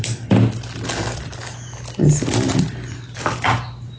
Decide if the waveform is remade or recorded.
recorded